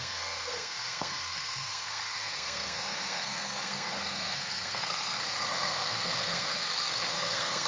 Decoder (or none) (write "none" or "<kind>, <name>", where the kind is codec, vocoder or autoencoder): codec, SNAC